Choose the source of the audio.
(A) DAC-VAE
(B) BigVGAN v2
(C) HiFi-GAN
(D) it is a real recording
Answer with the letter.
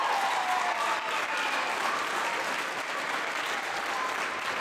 B